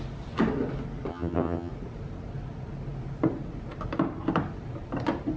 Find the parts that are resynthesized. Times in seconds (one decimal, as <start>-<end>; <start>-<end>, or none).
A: 1.1-1.7